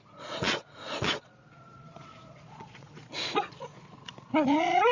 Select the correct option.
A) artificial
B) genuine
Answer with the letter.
A